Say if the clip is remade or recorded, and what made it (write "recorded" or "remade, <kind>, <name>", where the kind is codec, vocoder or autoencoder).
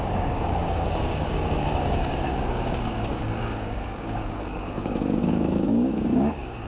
remade, codec, DAC